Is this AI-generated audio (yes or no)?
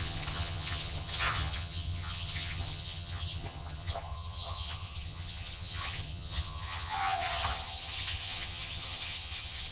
yes